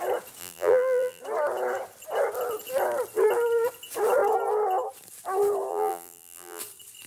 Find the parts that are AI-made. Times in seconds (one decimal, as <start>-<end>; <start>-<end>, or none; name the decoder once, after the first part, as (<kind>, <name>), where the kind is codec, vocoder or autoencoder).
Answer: 0.4-1.2 (vocoder, BigVGAN v2); 5.7-6.6